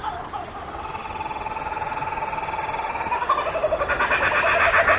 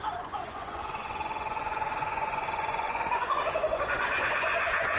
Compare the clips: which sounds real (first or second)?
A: first